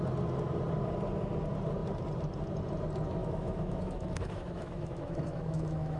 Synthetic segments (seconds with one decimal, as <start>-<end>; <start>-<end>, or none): 3.2-6.0